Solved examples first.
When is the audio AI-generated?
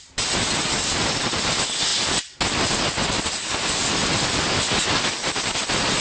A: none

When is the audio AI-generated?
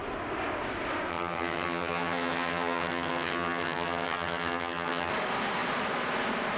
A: 1.1-5.1 (vocoder, HiFi-GAN)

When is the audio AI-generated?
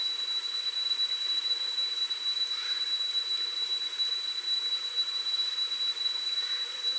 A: none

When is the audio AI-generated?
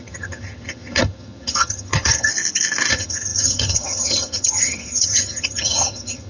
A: 0.0-2.3 (vocoder, HiFi-GAN); 2.9-6.3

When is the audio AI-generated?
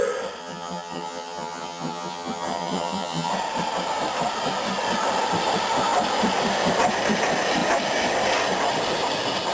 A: 0.4-3.3 (vocoder, HiFi-GAN)